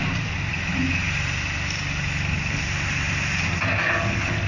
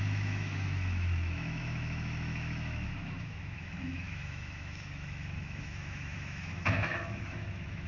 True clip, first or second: first